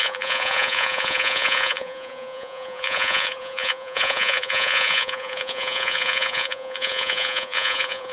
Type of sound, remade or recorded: remade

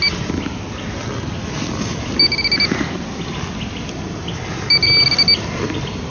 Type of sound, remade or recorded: recorded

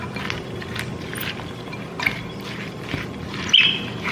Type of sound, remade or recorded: recorded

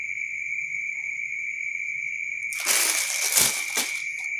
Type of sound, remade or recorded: recorded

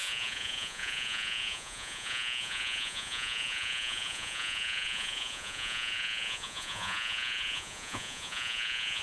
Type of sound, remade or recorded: remade